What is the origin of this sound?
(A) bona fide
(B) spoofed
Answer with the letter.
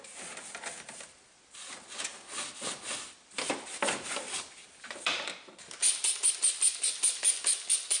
A